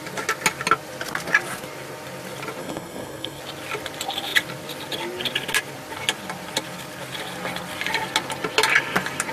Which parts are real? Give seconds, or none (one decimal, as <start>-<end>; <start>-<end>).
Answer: 0.0-2.6; 3.4-9.3